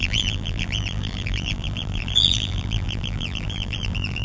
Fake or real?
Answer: fake